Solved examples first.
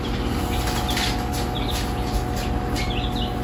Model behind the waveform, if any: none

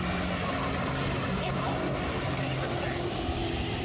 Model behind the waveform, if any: none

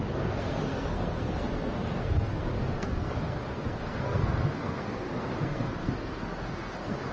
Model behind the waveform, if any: codec, SNAC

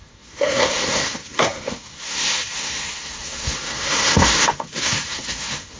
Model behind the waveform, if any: codec, SNAC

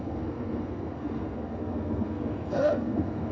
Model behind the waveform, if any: codec, SNAC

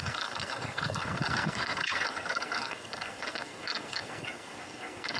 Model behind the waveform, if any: codec, SNAC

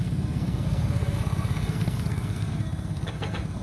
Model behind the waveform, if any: codec, SNAC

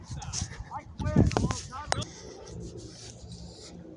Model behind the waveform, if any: none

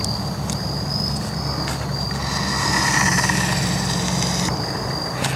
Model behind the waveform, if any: none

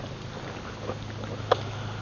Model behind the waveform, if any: none